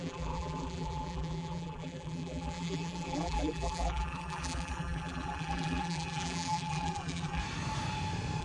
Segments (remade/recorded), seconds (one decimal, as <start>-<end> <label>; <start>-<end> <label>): 0.0-7.4 remade; 7.4-8.4 recorded